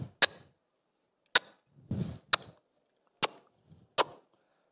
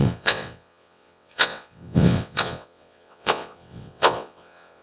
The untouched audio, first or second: first